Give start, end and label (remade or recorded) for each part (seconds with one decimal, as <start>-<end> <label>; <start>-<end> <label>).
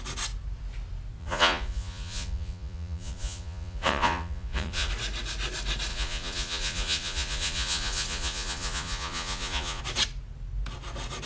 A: 0.0-1.2 recorded; 1.2-4.9 remade; 4.9-5.9 recorded; 5.9-9.8 remade; 9.8-11.2 recorded